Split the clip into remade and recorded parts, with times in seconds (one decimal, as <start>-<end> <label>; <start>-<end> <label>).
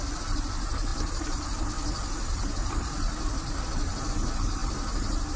0.0-5.4 recorded